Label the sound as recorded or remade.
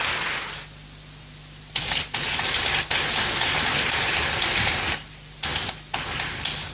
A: recorded